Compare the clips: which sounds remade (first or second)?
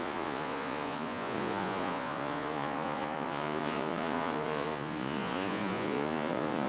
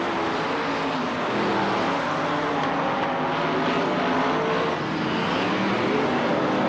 first